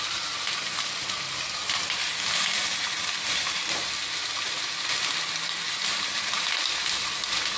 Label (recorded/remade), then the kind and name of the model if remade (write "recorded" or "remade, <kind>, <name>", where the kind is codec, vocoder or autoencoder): recorded